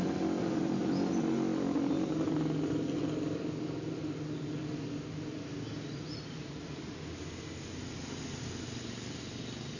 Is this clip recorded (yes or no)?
yes